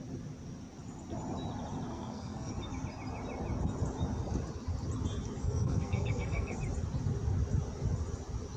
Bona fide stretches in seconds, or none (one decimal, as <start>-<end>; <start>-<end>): 0.0-1.9; 2.5-5.4; 6.6-8.6